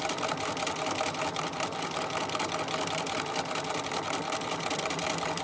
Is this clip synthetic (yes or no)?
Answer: no